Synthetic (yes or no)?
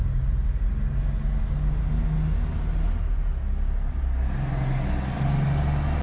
no